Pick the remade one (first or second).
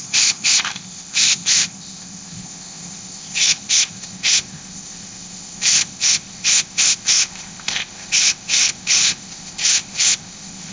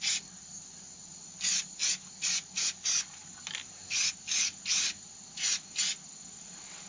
first